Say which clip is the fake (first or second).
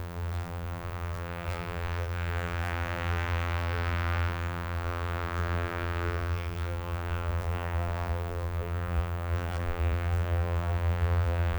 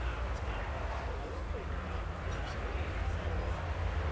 first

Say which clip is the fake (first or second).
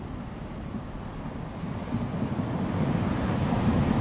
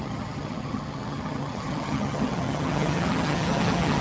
second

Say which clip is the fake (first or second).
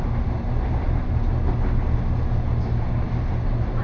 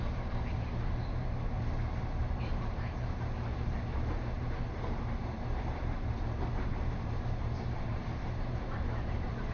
second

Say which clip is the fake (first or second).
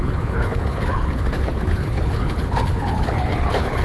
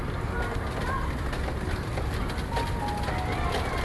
first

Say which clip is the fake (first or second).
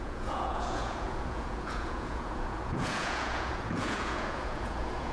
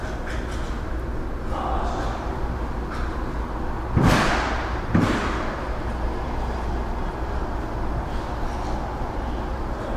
first